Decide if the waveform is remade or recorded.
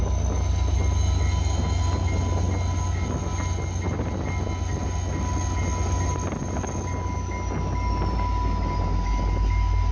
recorded